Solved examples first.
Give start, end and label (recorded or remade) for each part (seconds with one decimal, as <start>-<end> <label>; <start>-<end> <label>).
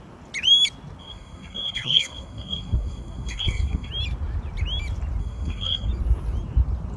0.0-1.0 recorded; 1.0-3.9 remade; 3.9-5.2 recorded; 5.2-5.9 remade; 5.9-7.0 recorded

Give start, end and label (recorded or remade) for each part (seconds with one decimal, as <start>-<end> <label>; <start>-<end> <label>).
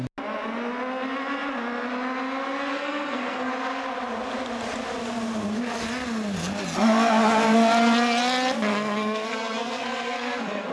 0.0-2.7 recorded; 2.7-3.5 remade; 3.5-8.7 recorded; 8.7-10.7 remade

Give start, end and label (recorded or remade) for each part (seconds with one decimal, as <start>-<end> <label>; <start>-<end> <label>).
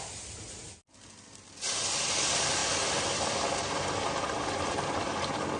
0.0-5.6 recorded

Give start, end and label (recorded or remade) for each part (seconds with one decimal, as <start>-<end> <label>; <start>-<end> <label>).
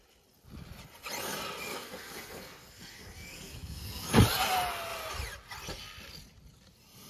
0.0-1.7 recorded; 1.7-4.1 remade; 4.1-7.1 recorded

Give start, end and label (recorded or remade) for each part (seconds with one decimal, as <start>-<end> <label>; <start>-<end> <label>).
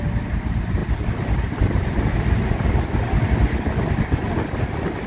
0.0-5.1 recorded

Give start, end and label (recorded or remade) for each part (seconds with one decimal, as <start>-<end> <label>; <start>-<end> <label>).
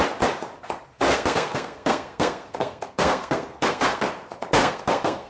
0.0-0.9 recorded; 0.9-4.1 remade; 4.1-4.6 recorded; 4.6-5.3 remade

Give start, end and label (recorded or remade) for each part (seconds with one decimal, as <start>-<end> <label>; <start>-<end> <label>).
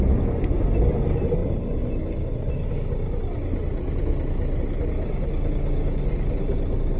0.0-7.0 recorded